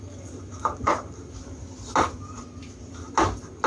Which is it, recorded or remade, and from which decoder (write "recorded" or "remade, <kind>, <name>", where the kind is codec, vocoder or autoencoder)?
recorded